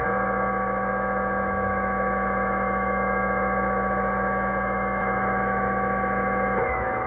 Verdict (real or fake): fake